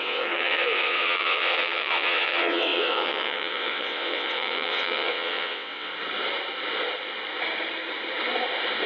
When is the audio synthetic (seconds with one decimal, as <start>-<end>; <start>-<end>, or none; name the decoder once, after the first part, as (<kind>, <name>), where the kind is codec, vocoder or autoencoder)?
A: 0.0-5.9 (vocoder, WaveNeXt)